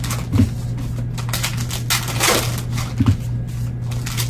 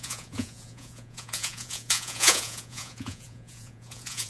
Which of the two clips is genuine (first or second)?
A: first